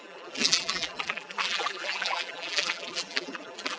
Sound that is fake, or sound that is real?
fake